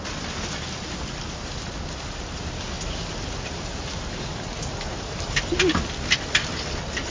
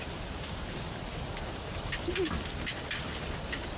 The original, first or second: first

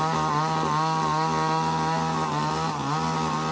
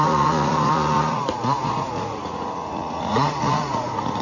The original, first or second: first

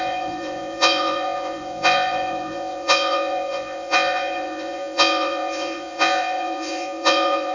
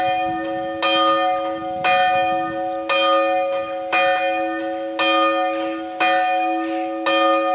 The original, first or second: second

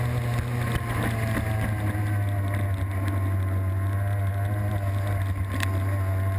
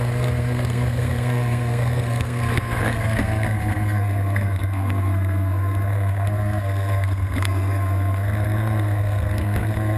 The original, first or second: first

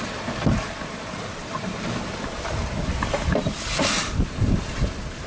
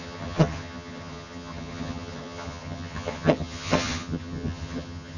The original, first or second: first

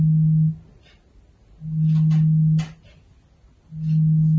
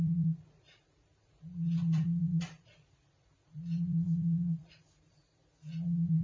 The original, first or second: first